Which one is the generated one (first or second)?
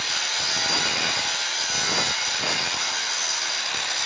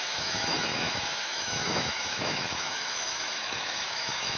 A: second